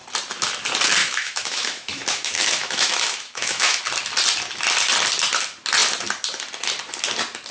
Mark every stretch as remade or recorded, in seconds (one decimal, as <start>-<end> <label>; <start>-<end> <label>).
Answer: 0.0-1.0 recorded; 1.0-3.8 remade; 3.8-7.5 recorded

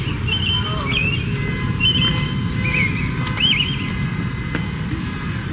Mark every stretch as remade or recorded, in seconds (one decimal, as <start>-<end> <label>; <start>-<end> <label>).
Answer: 0.0-5.5 recorded

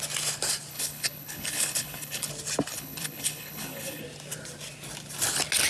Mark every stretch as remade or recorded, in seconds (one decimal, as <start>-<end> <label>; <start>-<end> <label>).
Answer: 0.0-0.7 recorded; 0.7-2.3 remade; 2.3-2.7 recorded; 2.7-4.0 remade; 4.0-5.7 recorded